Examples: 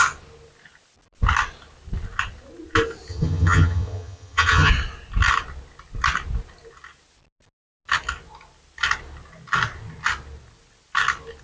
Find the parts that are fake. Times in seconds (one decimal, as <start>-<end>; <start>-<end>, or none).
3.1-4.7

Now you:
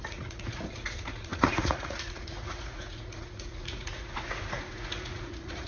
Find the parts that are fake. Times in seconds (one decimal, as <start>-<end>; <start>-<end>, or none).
0.0-5.7

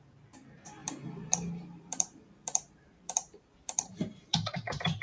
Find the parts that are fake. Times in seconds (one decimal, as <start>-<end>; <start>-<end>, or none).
0.0-5.0

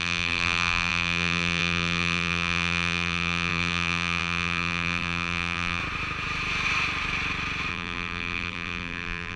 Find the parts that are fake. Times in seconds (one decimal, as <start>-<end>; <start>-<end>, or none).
0.0-5.8; 7.7-9.4